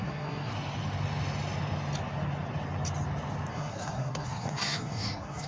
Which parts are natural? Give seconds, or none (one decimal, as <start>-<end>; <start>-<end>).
0.5-3.5